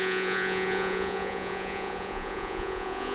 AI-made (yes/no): yes